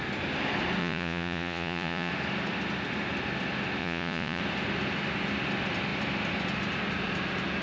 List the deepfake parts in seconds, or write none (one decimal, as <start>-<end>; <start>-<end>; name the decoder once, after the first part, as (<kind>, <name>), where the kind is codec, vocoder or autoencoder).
0.8-2.1 (vocoder, Vocos); 3.8-4.4